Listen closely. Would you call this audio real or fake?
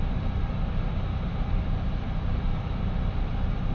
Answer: real